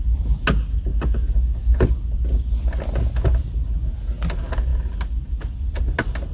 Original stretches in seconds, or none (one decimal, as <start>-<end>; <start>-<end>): 0.0-6.3